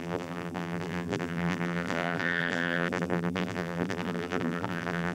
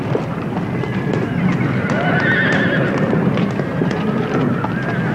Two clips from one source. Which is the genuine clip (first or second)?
second